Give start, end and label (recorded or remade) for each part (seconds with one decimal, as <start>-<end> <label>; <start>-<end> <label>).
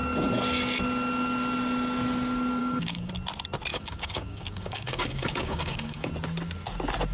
0.0-2.6 recorded; 2.6-3.1 remade; 3.1-3.7 recorded; 3.7-6.1 remade; 6.1-7.1 recorded